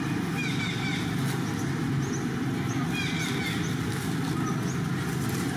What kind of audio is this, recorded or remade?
recorded